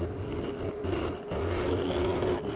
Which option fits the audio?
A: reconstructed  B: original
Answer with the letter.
B